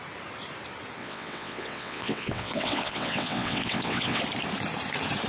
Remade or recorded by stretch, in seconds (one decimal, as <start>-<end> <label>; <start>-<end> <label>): 0.0-1.0 recorded; 1.0-4.2 remade; 4.2-5.3 recorded